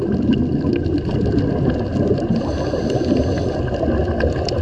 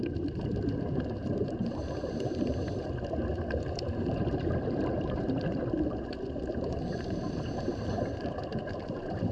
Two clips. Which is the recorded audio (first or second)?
first